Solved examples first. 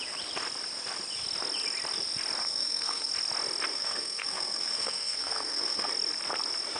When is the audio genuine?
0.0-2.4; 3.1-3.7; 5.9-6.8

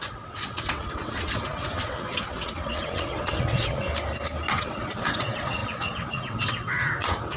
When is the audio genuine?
3.9-4.5

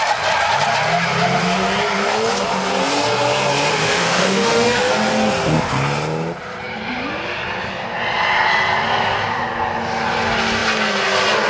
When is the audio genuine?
0.0-3.7; 4.9-11.5

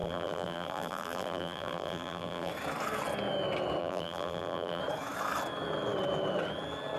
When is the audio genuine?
2.5-3.8; 4.8-7.0

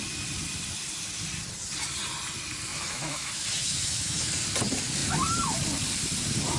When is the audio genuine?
0.0-2.7; 4.3-6.6

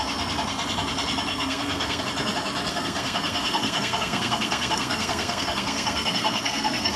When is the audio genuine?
0.0-1.3; 2.0-2.7

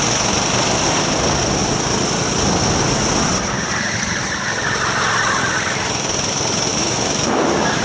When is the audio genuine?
0.0-6.7